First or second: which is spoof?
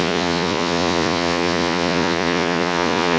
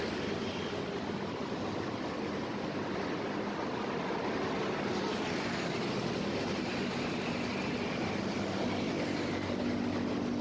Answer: first